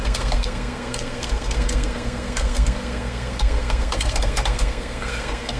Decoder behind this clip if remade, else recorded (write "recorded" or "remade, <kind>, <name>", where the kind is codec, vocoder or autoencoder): remade, codec, SNAC